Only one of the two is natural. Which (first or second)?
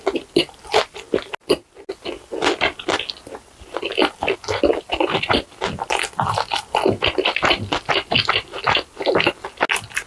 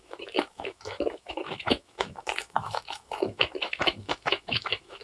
first